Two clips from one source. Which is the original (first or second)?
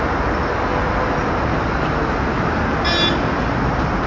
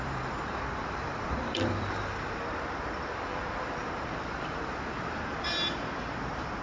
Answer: first